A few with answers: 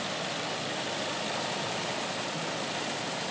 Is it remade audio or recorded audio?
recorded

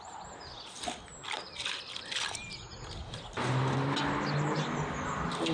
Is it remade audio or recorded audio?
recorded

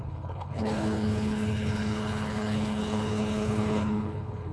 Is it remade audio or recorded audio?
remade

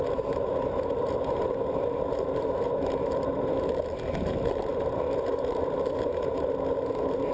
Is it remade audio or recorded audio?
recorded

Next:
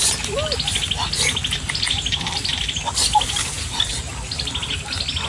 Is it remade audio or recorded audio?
recorded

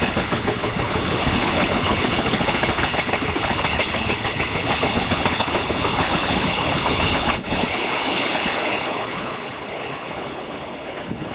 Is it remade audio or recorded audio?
remade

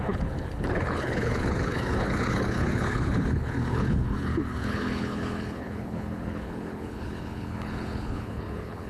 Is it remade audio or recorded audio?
remade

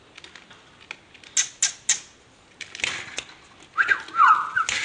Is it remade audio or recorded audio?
recorded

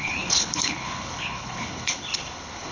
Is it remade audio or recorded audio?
remade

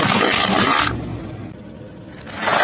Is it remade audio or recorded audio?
recorded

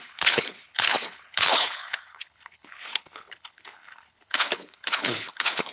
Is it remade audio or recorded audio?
remade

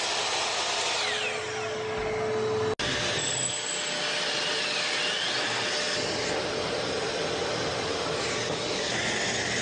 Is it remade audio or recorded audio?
recorded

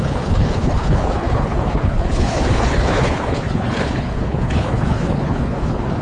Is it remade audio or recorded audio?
remade